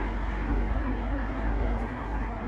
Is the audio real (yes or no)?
no